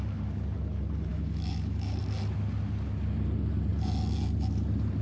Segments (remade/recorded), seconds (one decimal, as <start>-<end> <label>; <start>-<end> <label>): 0.0-1.1 recorded; 1.1-2.0 remade; 2.0-5.0 recorded